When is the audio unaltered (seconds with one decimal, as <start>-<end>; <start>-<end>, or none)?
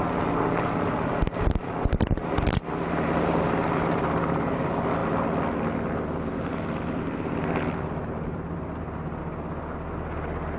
0.0-10.6